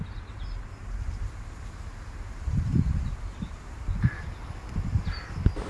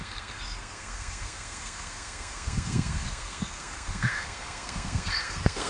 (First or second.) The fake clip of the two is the second